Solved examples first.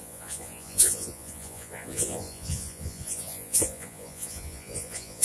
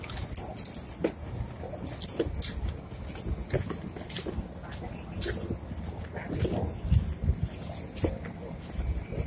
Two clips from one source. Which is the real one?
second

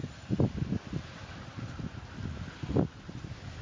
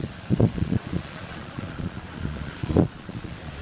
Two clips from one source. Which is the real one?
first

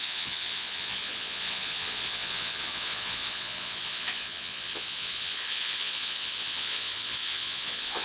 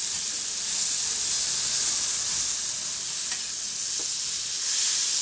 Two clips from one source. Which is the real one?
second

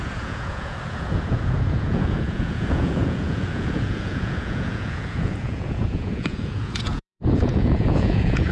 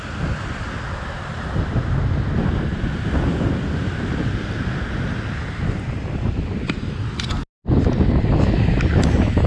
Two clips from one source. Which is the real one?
second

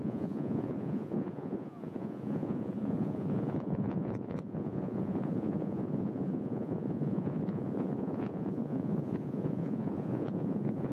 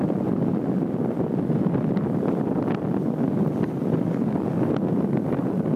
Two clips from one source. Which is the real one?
second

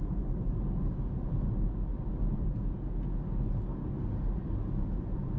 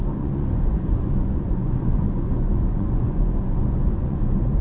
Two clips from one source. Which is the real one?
first